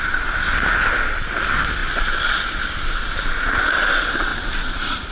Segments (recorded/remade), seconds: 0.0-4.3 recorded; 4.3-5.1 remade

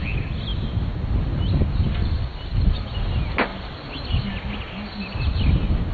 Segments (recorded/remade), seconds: 0.0-5.9 recorded

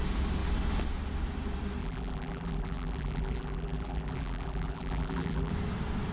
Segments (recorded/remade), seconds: 0.0-1.8 recorded; 1.8-5.5 remade; 5.5-6.1 recorded

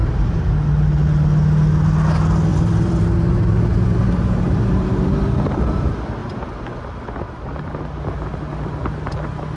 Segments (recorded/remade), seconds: 0.0-0.5 remade; 0.5-2.5 recorded; 2.5-5.1 remade; 5.1-9.6 recorded

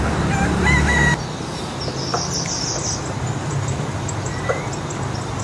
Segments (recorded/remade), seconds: 0.0-2.1 recorded; 2.1-4.7 remade; 4.7-5.4 recorded

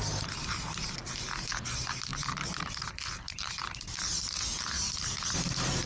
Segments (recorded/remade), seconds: 0.0-2.1 recorded; 2.1-5.9 remade